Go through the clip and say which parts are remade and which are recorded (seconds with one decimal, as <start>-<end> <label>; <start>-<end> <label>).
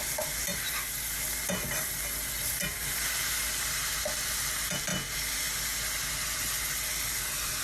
0.0-7.6 recorded